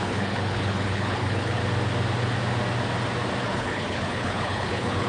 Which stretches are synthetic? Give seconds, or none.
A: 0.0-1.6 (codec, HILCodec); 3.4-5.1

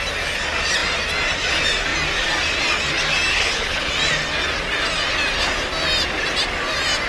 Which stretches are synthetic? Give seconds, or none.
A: 3.3-3.9 (codec, HILCodec)

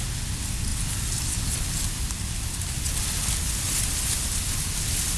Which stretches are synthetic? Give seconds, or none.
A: none